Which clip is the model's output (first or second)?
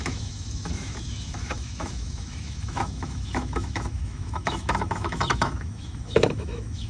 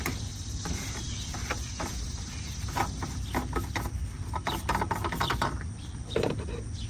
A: first